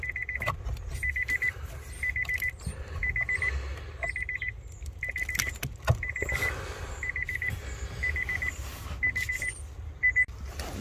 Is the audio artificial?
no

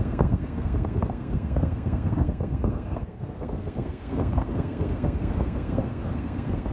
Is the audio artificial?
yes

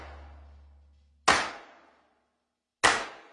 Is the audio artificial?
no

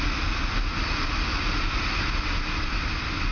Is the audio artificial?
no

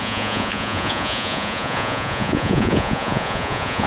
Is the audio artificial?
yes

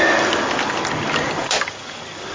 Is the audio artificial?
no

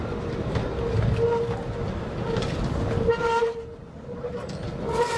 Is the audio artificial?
no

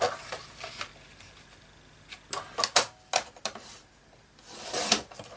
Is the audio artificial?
no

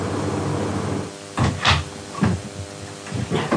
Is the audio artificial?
no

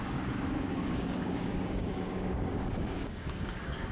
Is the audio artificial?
yes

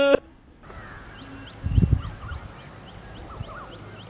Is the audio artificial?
no